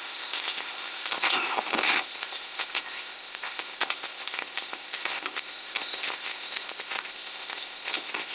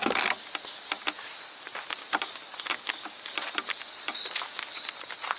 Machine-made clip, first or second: first